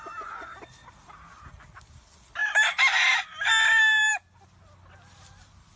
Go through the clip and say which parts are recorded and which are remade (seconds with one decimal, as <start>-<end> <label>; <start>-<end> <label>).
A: 0.0-5.8 recorded